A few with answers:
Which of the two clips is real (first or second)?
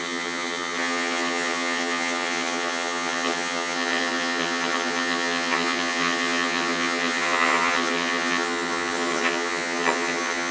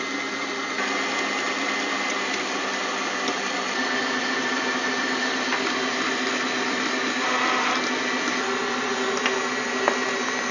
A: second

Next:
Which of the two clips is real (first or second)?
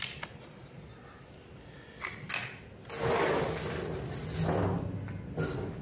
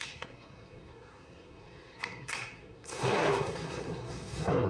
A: first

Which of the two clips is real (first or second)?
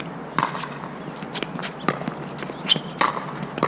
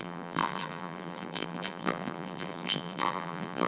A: first